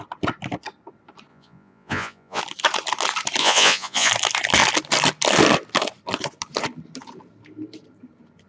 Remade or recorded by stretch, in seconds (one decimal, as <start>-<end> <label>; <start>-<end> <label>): 0.0-1.3 recorded; 1.3-2.4 remade; 2.4-3.4 recorded; 3.4-4.1 remade; 4.1-8.5 recorded